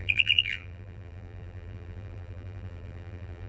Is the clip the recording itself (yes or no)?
no